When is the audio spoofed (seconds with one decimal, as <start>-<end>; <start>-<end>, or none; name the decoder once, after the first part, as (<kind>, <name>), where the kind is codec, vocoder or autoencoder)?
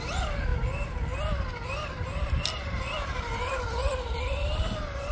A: none